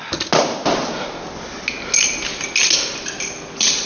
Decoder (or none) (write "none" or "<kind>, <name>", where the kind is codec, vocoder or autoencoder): none